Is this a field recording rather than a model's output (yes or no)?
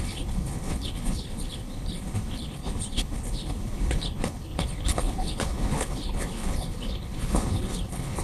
no